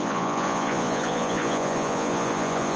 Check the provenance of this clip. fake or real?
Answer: fake